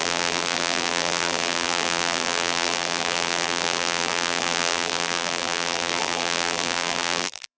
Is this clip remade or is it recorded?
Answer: remade